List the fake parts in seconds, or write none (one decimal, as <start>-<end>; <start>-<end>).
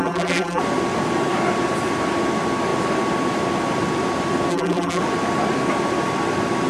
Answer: 0.0-0.6; 4.5-5.0